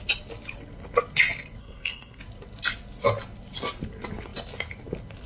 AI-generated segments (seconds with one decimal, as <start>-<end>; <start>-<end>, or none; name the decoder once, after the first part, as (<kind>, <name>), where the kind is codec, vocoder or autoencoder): 1.6-2.2 (codec, SNAC)